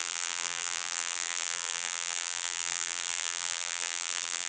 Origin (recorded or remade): remade